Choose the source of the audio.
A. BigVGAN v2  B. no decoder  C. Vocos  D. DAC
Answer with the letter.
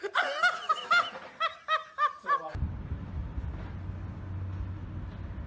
B